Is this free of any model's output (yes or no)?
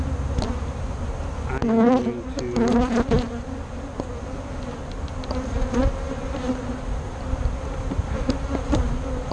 yes